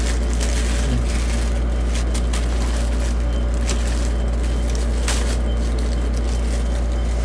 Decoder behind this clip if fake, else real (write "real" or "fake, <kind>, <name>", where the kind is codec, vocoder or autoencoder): real